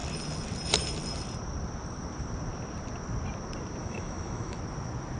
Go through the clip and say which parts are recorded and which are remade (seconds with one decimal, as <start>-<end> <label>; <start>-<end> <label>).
0.0-3.8 recorded; 3.8-4.6 remade; 4.6-5.2 recorded